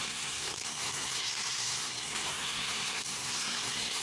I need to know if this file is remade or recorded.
remade